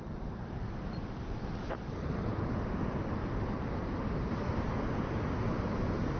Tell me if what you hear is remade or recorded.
recorded